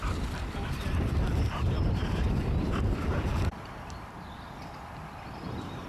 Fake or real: fake